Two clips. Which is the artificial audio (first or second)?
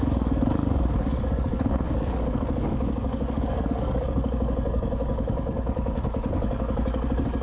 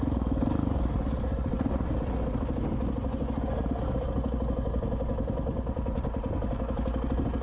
first